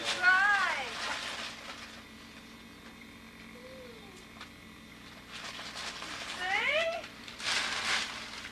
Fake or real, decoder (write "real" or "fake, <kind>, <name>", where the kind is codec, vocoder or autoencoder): real